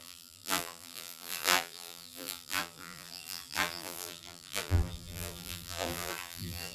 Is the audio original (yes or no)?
no